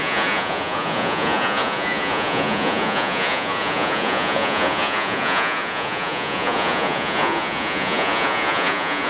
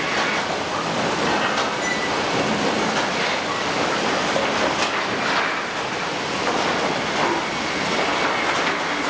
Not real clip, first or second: first